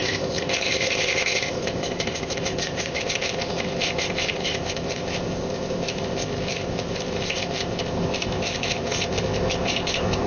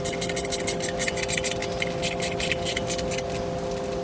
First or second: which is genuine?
second